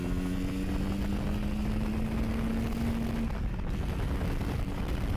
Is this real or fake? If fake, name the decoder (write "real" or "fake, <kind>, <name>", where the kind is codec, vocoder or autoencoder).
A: real